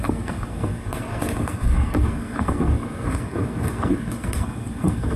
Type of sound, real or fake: fake